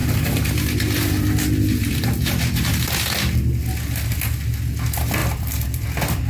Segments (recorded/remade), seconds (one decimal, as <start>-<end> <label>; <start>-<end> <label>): 0.0-3.5 remade; 3.5-5.2 recorded; 5.2-6.3 remade